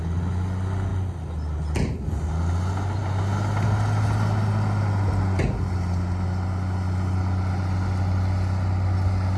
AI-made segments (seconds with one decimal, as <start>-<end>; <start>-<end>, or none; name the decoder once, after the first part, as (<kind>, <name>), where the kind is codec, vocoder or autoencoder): none